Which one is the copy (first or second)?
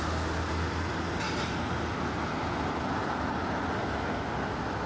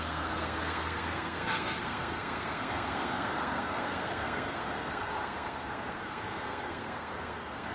second